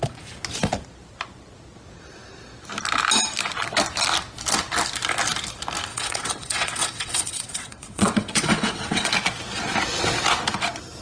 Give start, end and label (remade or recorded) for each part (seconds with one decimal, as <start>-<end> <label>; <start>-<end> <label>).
0.0-5.9 recorded; 5.9-9.1 remade; 9.1-11.0 recorded